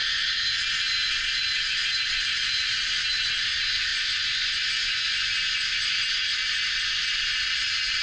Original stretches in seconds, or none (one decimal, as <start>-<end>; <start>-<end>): 0.0-3.9; 6.0-8.0